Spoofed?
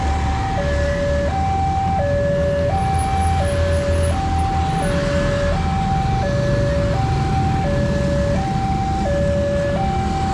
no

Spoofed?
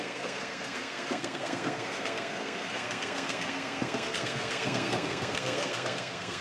yes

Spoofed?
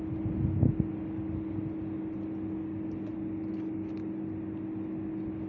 no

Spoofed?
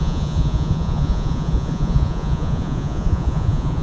yes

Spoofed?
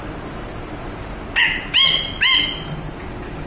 no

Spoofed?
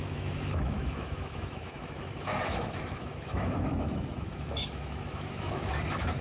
yes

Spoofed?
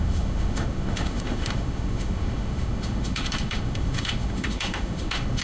yes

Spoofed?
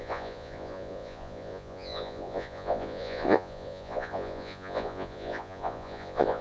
yes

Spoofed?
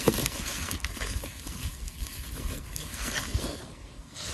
yes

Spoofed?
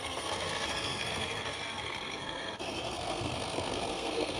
yes